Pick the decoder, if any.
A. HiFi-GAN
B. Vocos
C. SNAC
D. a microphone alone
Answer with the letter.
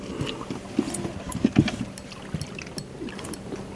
D